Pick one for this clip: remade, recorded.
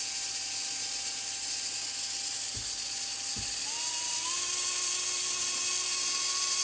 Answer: recorded